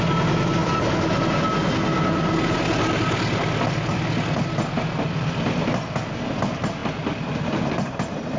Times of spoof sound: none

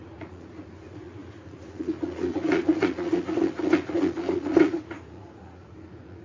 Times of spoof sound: 0.0-6.2 (vocoder, Vocos)

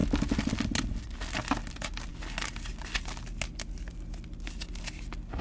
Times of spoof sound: none

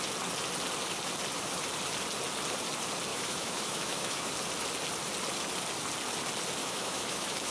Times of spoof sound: 3.1-4.3 (autoencoder, DAC-VAE); 6.6-7.5

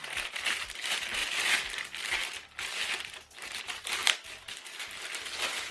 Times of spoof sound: 0.0-1.2 (vocoder, BigVGAN v2); 3.6-5.7

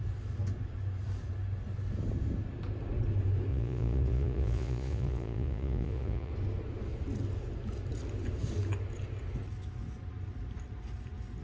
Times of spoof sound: 3.5-6.3 (vocoder, Vocos)

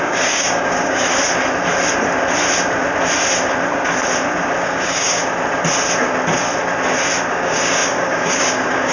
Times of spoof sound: 0.0-1.1 (codec, DAC); 4.6-5.2; 7.3-8.9

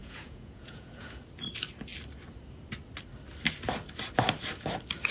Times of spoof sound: 0.0-1.2 (vocoder, Vocos)